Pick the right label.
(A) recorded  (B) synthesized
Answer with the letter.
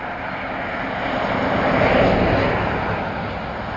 A